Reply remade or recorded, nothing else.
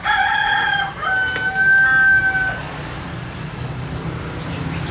recorded